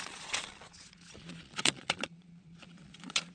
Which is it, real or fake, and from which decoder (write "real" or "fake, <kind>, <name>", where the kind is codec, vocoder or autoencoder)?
fake, vocoder, Vocos